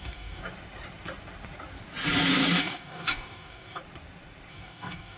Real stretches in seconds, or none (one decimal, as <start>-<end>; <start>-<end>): 0.4-2.6; 3.8-4.5